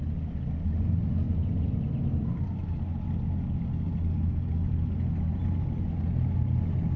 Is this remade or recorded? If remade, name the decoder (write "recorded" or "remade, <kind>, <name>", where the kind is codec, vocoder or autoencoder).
recorded